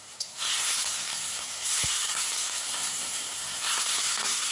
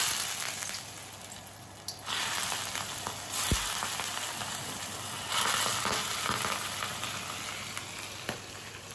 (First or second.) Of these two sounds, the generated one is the first